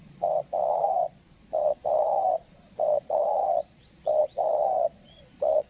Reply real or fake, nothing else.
fake